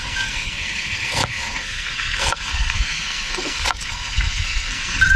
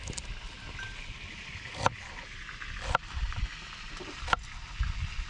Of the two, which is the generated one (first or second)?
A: first